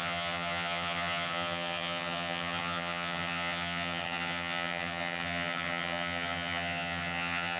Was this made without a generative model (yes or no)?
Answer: no